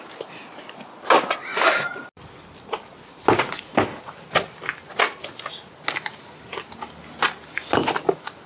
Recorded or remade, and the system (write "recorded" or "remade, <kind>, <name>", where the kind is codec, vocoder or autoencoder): recorded